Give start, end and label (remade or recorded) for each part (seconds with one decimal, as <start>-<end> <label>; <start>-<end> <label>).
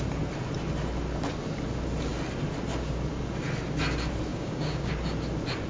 0.0-4.3 recorded; 4.3-4.9 remade; 4.9-5.7 recorded